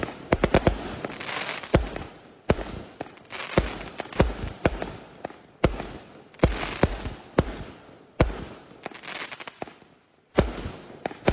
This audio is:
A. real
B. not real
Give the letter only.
A